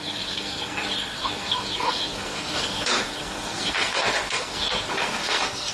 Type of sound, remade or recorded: remade